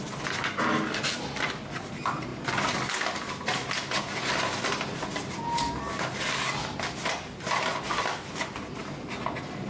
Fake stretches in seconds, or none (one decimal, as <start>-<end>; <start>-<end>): none